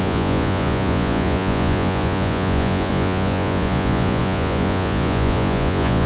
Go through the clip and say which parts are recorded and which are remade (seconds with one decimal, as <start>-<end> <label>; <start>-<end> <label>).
0.0-6.1 remade